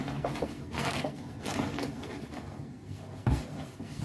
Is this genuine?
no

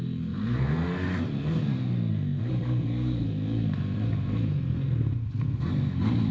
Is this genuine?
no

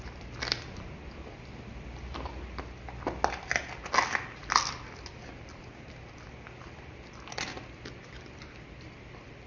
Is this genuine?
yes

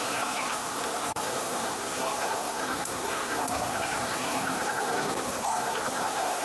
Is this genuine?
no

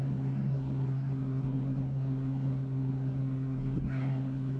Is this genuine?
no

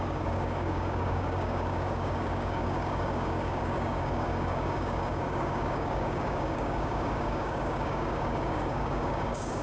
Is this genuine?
no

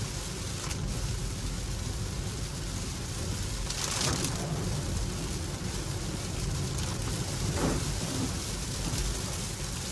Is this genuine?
yes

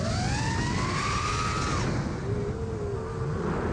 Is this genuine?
yes